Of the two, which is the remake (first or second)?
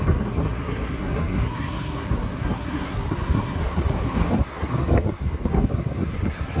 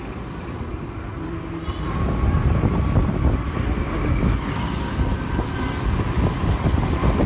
first